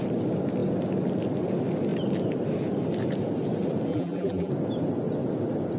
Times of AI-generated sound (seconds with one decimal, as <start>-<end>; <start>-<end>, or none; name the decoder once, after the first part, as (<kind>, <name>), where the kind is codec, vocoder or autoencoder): 3.9-4.5 (vocoder, BigVGAN v2)